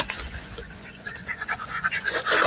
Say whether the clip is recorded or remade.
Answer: remade